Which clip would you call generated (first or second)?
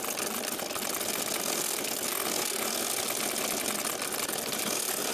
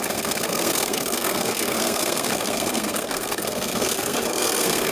second